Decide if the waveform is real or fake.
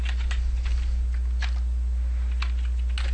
real